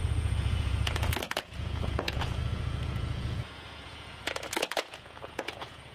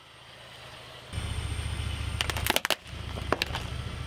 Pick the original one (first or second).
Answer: second